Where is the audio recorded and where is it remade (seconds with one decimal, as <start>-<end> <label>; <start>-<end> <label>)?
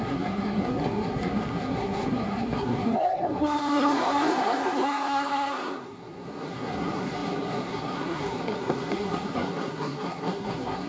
0.0-10.9 remade